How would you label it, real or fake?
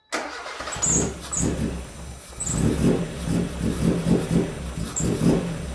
real